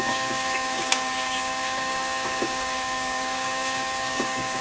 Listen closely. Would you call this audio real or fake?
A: fake